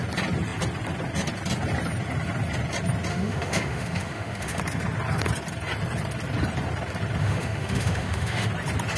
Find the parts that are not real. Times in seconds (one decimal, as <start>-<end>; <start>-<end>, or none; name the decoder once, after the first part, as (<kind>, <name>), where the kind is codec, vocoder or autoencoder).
3.1-4.6 (autoencoder, DAC-VAE); 7.2-8.5